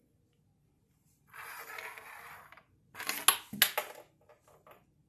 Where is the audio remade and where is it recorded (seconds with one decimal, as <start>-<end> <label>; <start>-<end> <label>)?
0.0-5.1 recorded